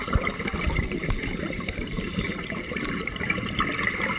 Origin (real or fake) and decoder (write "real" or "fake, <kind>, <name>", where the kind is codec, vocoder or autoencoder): real